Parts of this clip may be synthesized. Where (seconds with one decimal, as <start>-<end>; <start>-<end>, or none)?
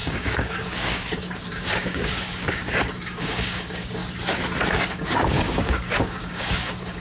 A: 0.0-4.0; 4.9-7.0